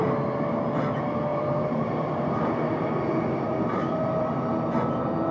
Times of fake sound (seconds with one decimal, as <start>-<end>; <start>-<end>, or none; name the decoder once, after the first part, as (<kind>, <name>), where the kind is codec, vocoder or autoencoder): 1.3-4.5 (vocoder, BigVGAN v2)